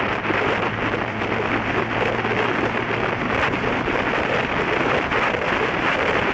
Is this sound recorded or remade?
remade